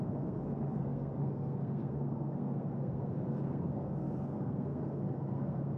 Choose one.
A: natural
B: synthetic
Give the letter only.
B